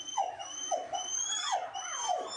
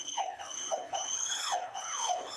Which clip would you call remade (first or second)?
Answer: second